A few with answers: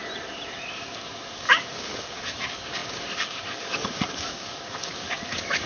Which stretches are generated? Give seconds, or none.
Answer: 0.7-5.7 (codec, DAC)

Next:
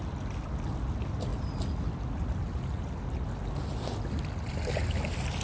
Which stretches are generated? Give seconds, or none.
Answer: none

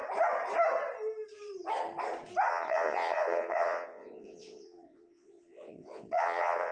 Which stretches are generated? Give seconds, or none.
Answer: 2.5-6.7 (vocoder, Vocos)

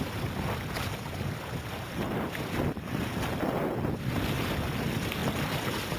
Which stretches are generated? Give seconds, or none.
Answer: none

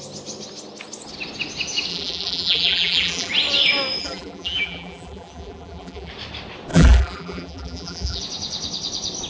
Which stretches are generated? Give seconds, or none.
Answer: 1.9-3.3 (vocoder, BigVGAN v2); 4.0-6.1; 6.7-8.2